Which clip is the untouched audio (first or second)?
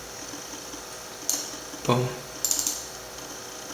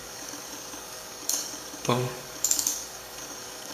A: first